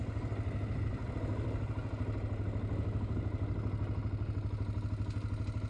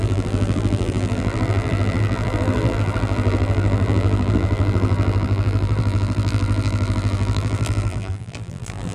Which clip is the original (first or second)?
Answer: first